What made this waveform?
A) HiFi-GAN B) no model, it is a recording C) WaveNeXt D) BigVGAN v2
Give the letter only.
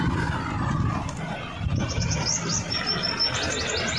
B